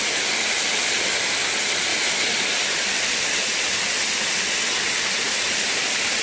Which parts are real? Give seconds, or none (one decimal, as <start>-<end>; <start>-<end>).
0.0-6.2